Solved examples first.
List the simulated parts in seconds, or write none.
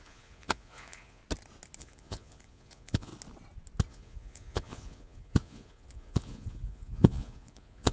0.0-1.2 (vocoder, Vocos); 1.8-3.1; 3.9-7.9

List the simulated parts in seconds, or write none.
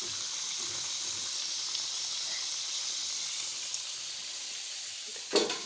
none